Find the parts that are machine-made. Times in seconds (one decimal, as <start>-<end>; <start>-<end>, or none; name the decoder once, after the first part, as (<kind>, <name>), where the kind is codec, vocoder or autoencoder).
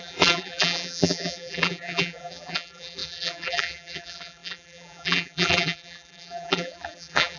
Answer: 0.0-7.4 (vocoder, BigVGAN v2)